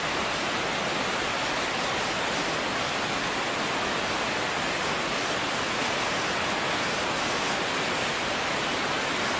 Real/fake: real